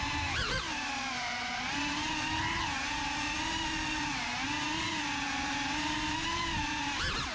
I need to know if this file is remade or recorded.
remade